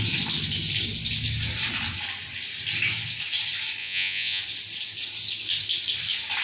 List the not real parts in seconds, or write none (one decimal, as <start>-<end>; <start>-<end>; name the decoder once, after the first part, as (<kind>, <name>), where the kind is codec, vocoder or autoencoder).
3.8-4.4 (vocoder, Vocos)